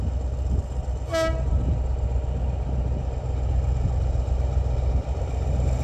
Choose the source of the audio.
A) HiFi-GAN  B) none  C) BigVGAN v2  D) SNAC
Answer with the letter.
B